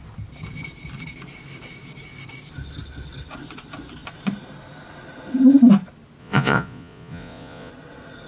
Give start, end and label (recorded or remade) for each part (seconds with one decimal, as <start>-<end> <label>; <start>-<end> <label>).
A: 0.0-6.2 recorded; 6.2-7.7 remade; 7.7-8.3 recorded